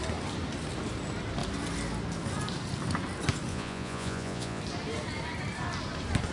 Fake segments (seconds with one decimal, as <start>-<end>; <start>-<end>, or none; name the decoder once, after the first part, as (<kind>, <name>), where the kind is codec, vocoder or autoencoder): 3.5-4.6 (vocoder, Vocos)